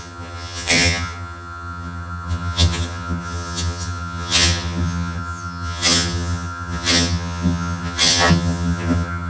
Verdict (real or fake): fake